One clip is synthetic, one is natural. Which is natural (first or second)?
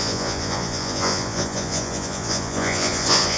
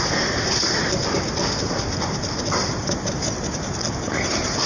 second